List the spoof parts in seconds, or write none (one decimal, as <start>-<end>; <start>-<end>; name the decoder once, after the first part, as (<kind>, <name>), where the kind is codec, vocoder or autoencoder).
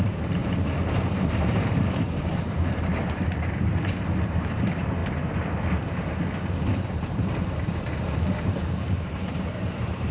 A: 0.0-0.4 (vocoder, BigVGAN v2); 1.0-5.0; 6.7-10.1